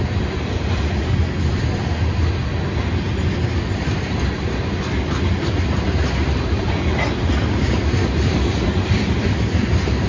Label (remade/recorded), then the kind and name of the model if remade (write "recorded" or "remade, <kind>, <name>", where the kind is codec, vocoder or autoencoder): recorded